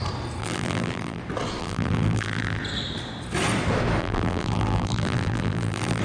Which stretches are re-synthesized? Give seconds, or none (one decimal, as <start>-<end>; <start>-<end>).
0.4-1.2; 1.6-2.6; 4.0-6.0